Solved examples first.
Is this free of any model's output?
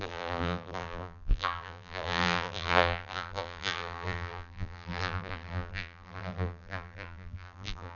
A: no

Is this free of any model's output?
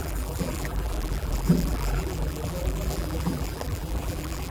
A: no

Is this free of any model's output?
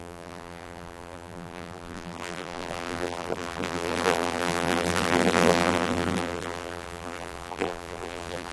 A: no